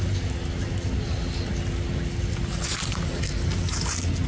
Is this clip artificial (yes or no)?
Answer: no